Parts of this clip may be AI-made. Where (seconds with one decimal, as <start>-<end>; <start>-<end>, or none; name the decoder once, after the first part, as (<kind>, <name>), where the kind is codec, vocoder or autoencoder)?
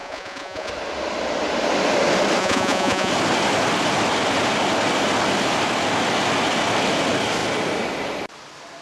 0.0-0.7 (vocoder, Vocos); 2.4-3.1